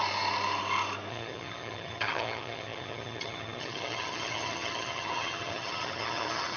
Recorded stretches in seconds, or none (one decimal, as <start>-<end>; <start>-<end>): 0.0-1.1